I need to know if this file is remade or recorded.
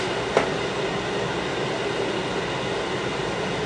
recorded